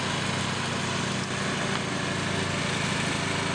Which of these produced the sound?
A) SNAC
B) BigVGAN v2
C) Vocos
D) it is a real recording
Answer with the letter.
D